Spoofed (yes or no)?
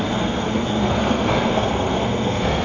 yes